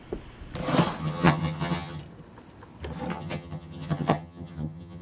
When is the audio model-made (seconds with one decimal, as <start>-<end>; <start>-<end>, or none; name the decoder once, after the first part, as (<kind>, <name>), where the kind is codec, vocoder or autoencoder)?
1.0-2.0 (vocoder, HiFi-GAN); 3.1-5.0